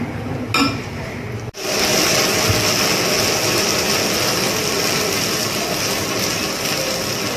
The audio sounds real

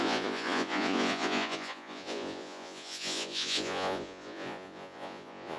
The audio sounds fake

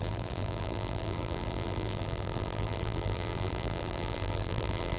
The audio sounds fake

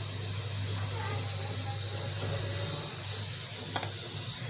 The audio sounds real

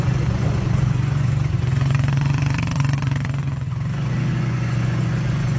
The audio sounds fake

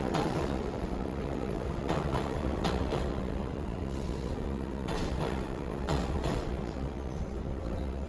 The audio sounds fake